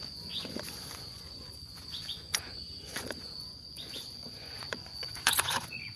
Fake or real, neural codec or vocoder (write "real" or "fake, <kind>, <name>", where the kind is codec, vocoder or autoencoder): fake, vocoder, Vocos